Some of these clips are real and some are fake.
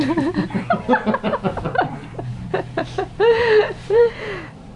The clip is fake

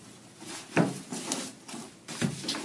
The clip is real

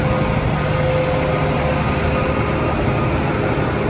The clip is real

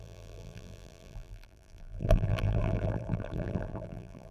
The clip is fake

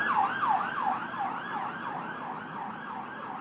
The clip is fake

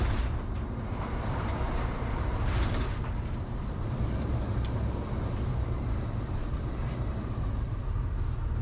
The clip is fake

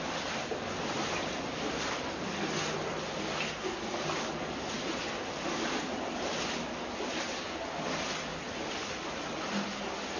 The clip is real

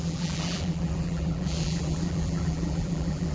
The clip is fake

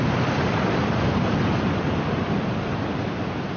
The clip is fake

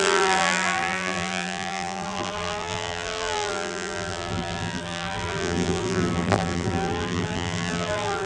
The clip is fake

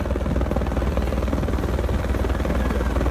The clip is real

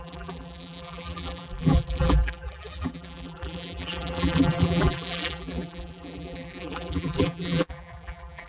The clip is fake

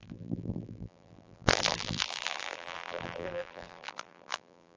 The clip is fake